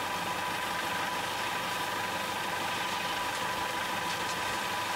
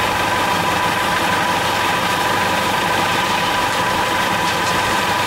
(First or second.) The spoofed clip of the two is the second